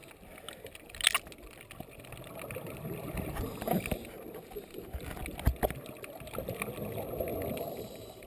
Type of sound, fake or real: real